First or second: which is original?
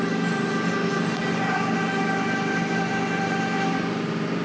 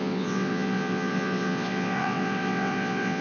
first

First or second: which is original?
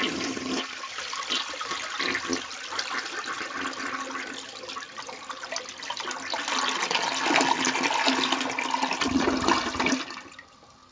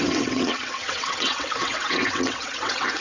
first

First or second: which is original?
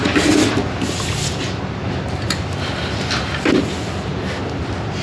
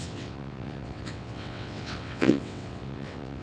first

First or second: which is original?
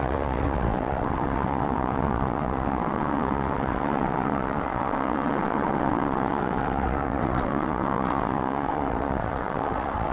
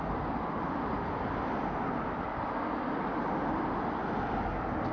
second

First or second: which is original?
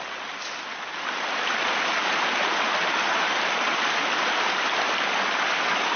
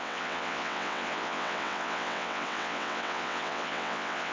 first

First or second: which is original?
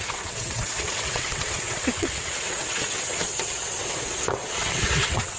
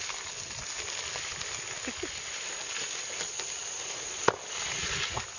second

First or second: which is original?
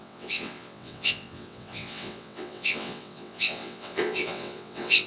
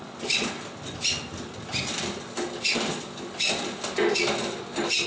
second